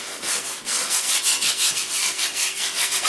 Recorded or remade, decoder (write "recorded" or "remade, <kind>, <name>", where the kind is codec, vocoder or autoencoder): remade, codec, SNAC